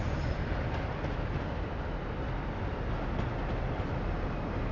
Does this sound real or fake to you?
real